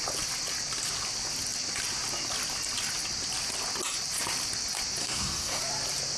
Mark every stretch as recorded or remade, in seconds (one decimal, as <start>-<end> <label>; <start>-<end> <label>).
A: 0.0-5.0 recorded; 5.0-5.6 remade; 5.6-6.2 recorded